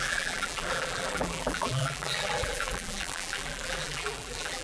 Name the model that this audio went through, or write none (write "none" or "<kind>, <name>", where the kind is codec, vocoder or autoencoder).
vocoder, BigVGAN v2